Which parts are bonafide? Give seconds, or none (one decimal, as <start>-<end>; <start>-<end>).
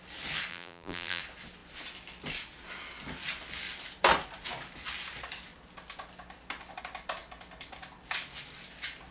0.0-0.5; 1.2-9.1